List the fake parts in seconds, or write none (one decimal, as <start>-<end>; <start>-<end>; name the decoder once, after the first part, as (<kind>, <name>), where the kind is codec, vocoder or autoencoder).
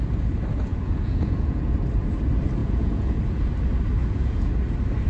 0.7-1.7 (vocoder, Vocos); 2.6-3.2; 4.0-4.5